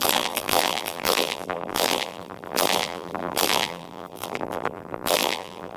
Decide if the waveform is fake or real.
fake